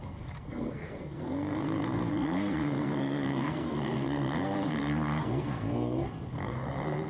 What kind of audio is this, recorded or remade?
remade